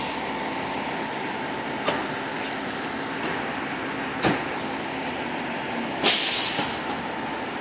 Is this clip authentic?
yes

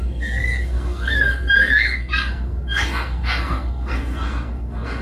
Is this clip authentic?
no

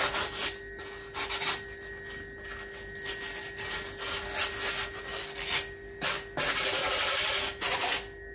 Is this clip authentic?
yes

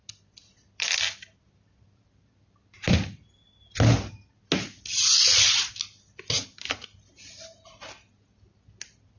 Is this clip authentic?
yes